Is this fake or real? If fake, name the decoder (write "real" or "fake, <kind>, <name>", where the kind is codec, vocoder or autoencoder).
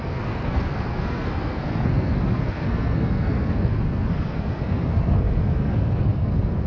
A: fake, codec, SNAC